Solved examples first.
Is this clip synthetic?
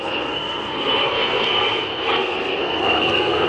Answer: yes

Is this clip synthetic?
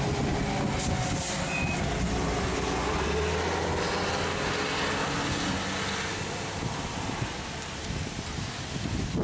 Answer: no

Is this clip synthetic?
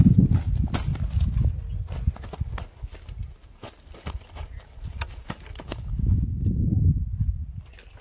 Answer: no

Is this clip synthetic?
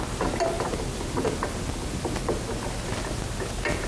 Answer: no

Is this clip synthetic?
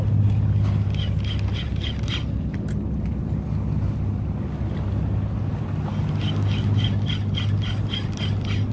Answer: no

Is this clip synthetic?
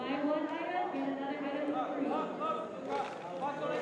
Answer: no